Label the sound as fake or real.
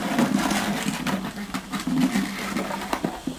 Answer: real